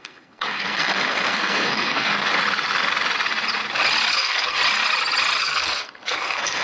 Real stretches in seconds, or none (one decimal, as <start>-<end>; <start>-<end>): 2.3-4.1; 4.6-5.4